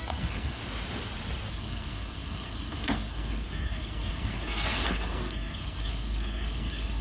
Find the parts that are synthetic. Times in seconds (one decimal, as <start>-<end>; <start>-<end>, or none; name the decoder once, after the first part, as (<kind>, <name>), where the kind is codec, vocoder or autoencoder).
0.0-0.6 (codec, SNAC); 1.5-7.0